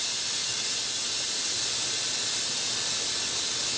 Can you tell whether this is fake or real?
real